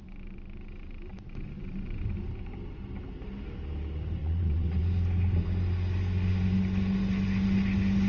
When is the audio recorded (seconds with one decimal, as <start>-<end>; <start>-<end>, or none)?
0.0-4.2; 4.8-8.1